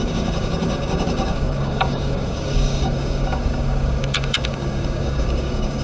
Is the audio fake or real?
fake